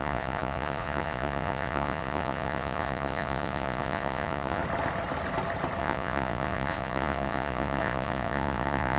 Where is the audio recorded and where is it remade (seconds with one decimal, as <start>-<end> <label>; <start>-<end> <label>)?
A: 0.0-4.6 remade; 4.6-5.8 recorded; 5.8-9.0 remade